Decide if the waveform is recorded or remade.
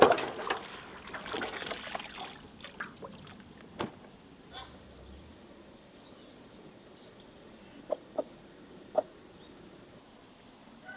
recorded